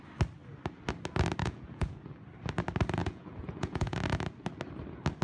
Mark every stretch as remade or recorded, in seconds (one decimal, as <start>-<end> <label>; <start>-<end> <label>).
0.0-1.4 recorded; 1.4-2.0 remade; 2.0-3.0 recorded; 3.0-4.0 remade; 4.0-5.2 recorded